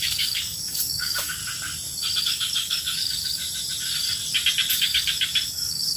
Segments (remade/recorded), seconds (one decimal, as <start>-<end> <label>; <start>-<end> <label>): 0.0-1.4 remade; 1.4-2.2 recorded; 2.2-3.4 remade; 3.4-4.7 recorded; 4.7-6.0 remade